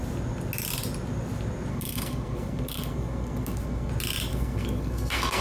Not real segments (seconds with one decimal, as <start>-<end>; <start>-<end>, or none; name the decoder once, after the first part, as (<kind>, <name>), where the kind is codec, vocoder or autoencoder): 1.7-3.9 (codec, SNAC); 4.3-5.4